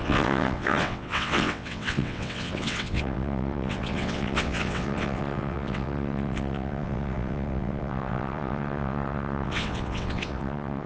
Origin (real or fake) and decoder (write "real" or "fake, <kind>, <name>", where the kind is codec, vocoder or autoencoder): fake, vocoder, WaveNeXt